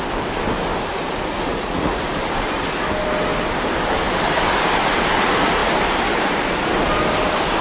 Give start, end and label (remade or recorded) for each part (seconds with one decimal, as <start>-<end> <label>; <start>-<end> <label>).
0.0-1.5 recorded; 1.5-2.0 remade; 2.0-7.6 recorded